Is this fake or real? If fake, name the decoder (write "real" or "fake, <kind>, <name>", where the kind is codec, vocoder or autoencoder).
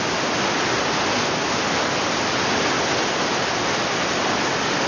real